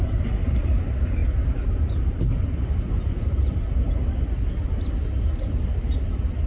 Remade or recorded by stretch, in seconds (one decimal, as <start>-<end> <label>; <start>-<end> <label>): 0.0-6.5 recorded